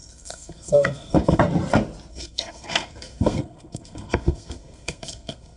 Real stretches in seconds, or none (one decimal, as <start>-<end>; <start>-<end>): 1.4-2.1